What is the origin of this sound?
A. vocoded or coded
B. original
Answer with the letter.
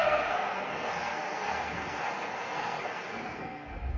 A